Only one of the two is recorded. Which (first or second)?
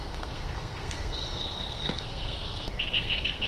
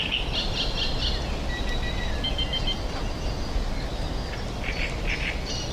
second